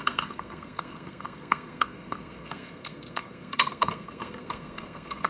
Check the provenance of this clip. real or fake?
fake